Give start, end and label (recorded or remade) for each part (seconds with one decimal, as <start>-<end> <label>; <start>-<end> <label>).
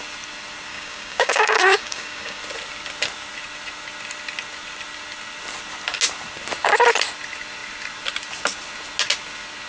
0.0-0.7 recorded; 0.7-2.4 remade; 2.4-9.7 recorded